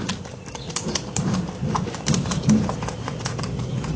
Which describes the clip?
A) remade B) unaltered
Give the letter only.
A